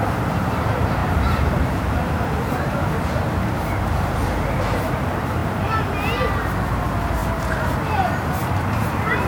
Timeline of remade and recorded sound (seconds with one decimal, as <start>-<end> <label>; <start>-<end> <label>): 0.0-5.4 remade; 5.4-6.7 recorded; 6.7-9.3 remade

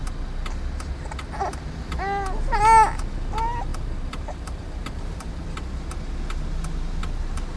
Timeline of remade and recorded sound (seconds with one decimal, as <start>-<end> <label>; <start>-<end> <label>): 0.0-3.7 recorded; 3.7-5.3 remade; 5.3-7.6 recorded

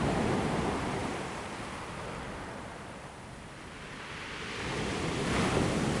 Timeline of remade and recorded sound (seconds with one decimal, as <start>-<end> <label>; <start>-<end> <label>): 0.0-1.0 recorded; 1.0-2.0 remade; 2.0-6.0 recorded

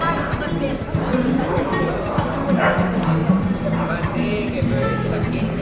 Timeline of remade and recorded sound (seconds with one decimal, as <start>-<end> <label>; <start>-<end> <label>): 0.0-5.6 remade

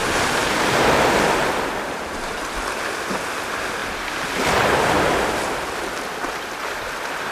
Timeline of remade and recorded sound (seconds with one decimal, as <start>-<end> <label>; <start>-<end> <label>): 0.0-0.4 recorded; 0.4-2.4 remade; 2.4-7.3 recorded

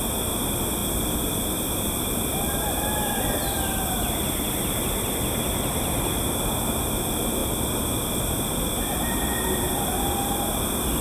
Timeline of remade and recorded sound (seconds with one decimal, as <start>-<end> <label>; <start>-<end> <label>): 0.0-0.8 recorded; 0.8-6.1 remade; 6.1-11.0 recorded

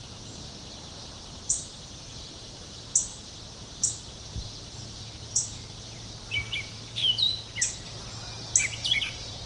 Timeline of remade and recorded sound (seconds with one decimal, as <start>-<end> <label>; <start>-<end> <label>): 0.0-7.0 remade; 7.0-8.6 recorded; 8.6-9.5 remade

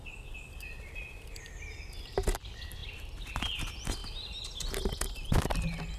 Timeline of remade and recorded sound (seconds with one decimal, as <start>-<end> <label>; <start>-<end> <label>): 0.0-6.0 recorded